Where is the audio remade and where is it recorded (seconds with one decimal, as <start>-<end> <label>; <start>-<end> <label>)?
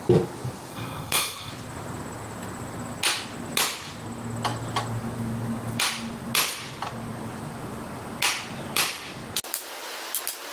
0.0-0.7 recorded; 0.7-1.5 remade; 1.5-10.5 recorded